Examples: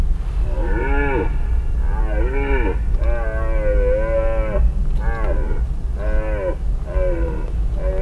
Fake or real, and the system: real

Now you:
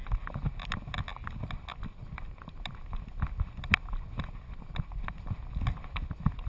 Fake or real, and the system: real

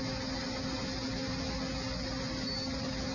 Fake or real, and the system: real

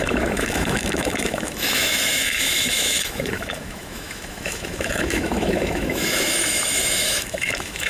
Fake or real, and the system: fake, autoencoder, DAC-VAE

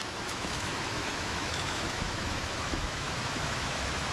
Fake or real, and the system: fake, autoencoder, DAC-VAE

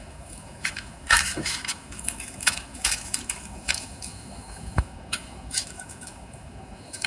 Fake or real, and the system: fake, autoencoder, DAC-VAE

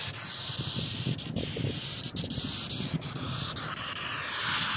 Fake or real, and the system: real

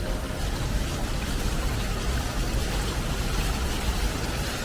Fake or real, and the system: real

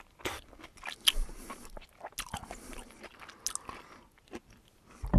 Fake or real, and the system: real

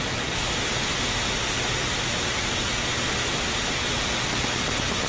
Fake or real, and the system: real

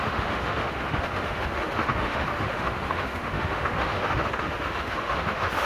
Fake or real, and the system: fake, autoencoder, DAC-VAE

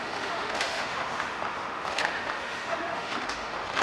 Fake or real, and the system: fake, autoencoder, DAC-VAE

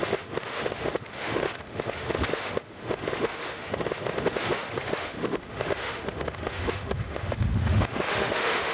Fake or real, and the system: fake, autoencoder, DAC-VAE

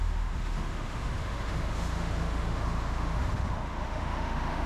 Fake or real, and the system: fake, autoencoder, DAC-VAE